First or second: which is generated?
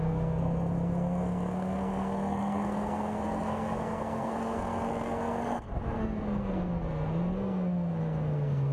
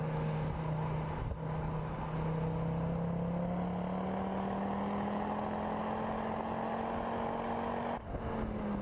first